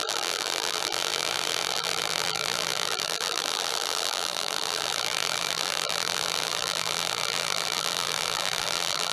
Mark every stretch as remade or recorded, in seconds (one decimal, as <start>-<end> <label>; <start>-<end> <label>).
0.0-9.1 remade